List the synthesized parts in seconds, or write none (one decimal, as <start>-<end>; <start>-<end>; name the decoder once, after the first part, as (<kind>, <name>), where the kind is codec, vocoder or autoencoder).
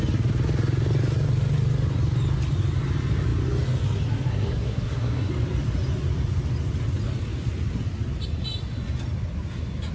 4.3-5.3 (codec, SNAC)